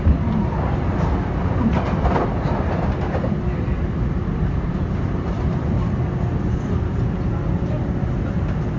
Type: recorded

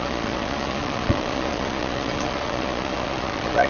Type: remade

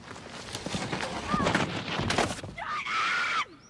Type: recorded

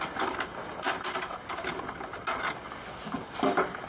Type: recorded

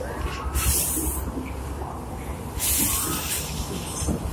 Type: recorded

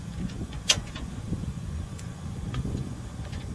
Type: remade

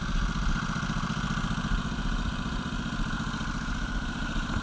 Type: recorded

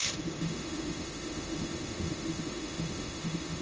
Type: remade